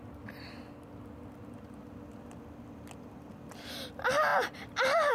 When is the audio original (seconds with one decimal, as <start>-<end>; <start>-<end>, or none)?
0.0-5.1